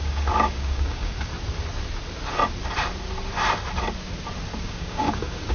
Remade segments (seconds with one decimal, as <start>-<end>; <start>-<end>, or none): 0.0-1.3; 4.6-5.5